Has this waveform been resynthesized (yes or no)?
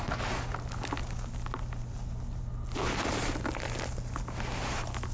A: no